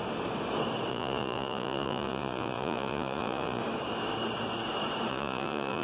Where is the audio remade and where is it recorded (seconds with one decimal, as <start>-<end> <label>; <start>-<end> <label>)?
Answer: 0.0-0.9 recorded; 0.9-3.6 remade; 3.6-5.1 recorded; 5.1-5.8 remade